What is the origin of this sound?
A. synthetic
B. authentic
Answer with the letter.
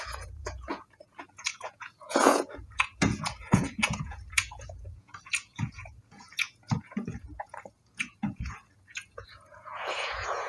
A